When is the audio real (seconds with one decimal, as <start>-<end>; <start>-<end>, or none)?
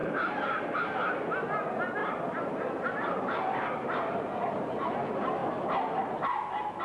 0.6-2.0; 5.0-6.8